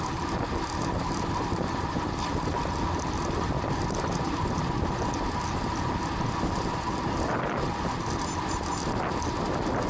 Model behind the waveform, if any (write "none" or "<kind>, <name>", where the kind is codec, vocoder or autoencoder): none